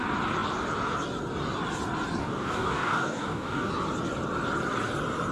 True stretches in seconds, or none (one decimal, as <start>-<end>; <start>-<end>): 0.0-2.2; 3.7-5.3